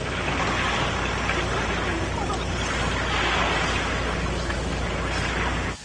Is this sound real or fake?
real